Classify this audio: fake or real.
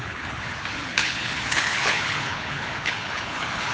fake